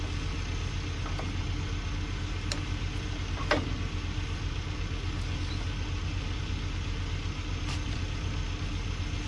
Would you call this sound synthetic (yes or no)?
no